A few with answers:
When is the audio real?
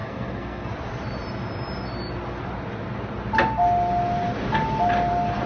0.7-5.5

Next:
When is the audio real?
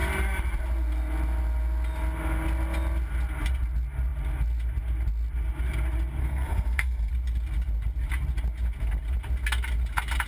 0.0-6.2; 7.1-10.3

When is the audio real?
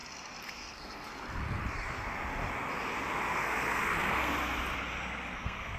0.0-0.5; 1.1-3.3; 4.3-5.3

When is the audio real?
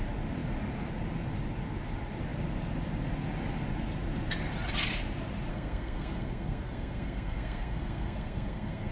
0.0-5.5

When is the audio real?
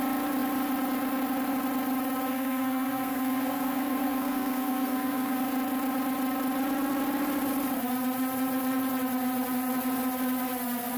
0.0-2.3; 5.4-11.0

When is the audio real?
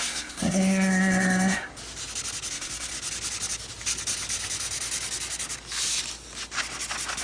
1.7-2.5; 2.9-7.2